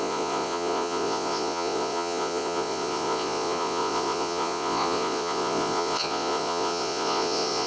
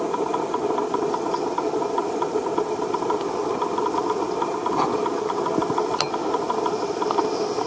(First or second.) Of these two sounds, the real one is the second